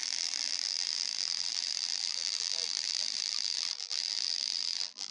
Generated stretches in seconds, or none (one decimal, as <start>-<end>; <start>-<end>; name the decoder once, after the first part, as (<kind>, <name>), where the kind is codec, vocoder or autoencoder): 0.0-5.1 (vocoder, BigVGAN v2)